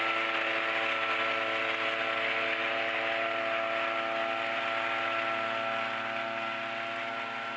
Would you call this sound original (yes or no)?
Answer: yes